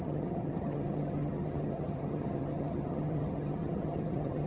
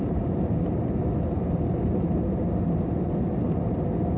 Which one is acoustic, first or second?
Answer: second